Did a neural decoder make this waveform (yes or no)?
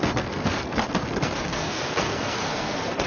yes